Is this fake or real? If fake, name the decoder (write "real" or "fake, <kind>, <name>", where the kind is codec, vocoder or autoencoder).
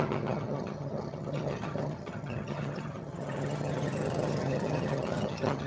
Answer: fake, vocoder, HiFi-GAN